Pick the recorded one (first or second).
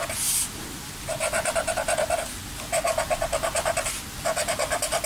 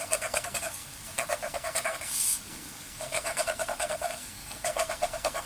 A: first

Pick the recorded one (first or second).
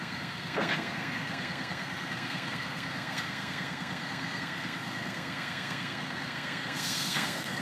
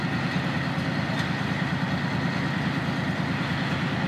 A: second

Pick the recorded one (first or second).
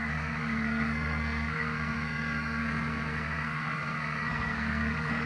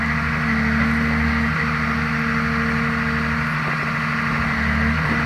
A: second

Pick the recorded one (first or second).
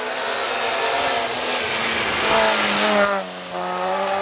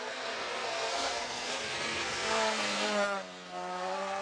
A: first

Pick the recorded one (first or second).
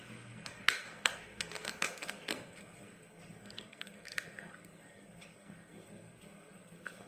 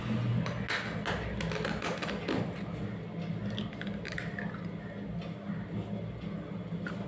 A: second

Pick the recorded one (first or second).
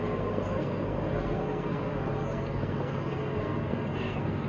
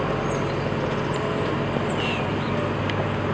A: second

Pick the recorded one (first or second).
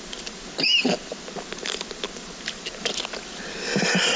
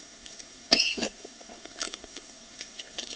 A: first